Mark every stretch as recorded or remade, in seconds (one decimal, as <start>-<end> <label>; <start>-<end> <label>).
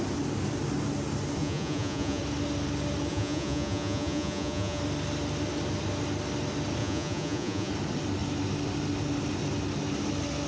0.0-1.4 recorded; 1.4-2.2 remade; 2.2-3.1 recorded; 3.1-4.8 remade; 4.8-6.8 recorded; 6.8-7.7 remade; 7.7-10.5 recorded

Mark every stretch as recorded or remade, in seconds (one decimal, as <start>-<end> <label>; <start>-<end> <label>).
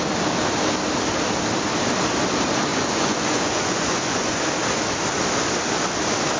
0.0-2.7 recorded; 2.7-4.4 remade; 4.4-6.4 recorded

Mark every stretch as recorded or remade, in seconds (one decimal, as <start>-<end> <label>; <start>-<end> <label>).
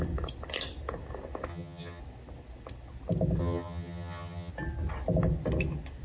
0.0-1.5 recorded; 1.5-2.0 remade; 2.0-3.4 recorded; 3.4-4.5 remade; 4.5-6.0 recorded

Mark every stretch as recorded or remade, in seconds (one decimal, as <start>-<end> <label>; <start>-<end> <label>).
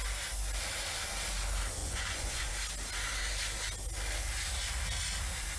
0.0-1.8 recorded; 1.8-2.5 remade; 2.5-5.6 recorded